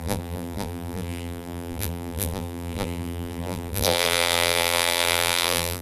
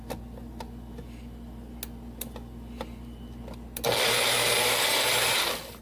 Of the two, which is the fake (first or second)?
first